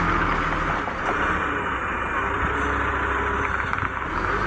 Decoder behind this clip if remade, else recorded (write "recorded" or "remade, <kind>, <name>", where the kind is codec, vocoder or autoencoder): recorded